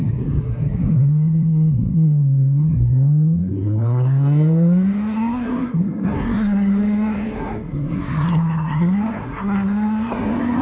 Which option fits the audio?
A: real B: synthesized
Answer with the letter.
B